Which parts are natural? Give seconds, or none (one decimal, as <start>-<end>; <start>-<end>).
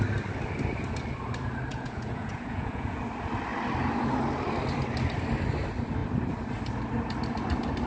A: 0.0-1.7; 3.0-7.9